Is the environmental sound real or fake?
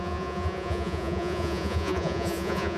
fake